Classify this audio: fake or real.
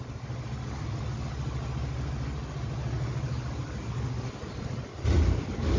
real